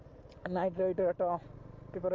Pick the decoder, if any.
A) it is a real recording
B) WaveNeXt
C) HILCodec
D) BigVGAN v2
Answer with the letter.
A